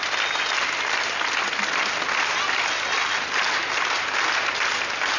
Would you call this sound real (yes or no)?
yes